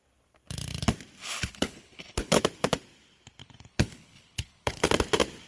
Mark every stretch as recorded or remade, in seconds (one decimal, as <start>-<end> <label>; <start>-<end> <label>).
0.0-1.2 recorded; 1.2-2.4 remade; 2.4-3.4 recorded; 3.4-4.9 remade; 4.9-5.5 recorded